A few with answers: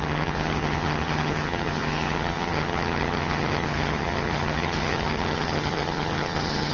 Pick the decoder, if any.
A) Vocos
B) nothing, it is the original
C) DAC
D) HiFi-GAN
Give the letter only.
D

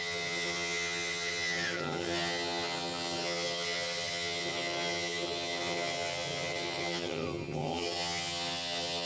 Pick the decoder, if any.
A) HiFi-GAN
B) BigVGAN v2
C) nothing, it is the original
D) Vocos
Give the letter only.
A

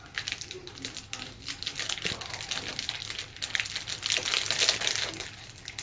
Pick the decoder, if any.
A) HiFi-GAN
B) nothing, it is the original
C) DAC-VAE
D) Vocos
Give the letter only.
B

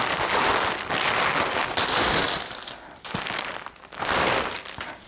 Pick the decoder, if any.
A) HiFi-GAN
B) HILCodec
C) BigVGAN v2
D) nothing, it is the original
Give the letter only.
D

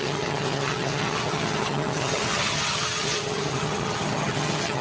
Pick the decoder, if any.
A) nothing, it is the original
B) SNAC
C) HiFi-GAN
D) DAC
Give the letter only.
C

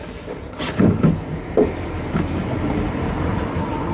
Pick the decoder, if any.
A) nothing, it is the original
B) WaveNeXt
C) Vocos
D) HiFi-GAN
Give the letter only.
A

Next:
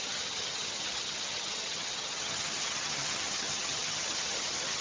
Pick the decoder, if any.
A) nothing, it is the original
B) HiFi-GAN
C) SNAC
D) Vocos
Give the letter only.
B